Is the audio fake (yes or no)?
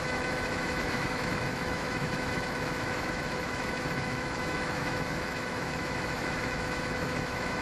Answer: yes